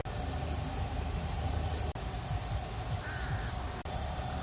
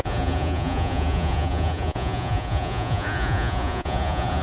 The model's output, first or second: second